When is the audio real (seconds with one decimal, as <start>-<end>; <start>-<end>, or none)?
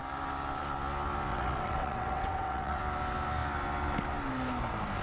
0.0-1.3; 2.8-5.0